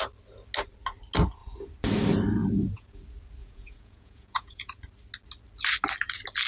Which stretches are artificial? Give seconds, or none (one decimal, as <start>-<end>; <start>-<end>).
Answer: 2.4-3.0; 3.4-4.7